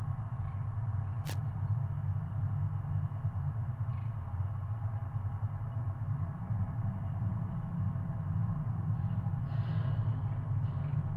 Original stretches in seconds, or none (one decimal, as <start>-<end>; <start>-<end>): 0.0-11.2